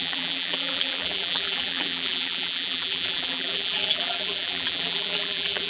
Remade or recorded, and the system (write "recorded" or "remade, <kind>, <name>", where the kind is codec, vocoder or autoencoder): remade, vocoder, BigVGAN v2